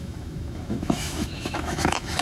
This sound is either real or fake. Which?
fake